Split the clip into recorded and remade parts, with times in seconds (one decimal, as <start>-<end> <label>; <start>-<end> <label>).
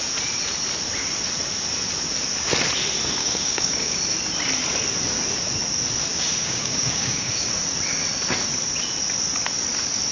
0.0-3.2 recorded; 3.2-4.0 remade; 4.0-6.1 recorded; 6.1-7.5 remade; 7.5-10.1 recorded